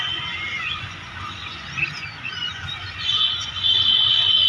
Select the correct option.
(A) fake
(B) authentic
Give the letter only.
A